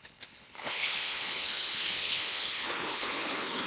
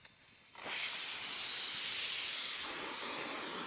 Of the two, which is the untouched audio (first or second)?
second